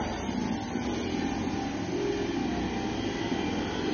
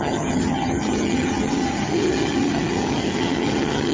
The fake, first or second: second